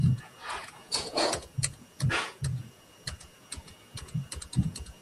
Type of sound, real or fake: fake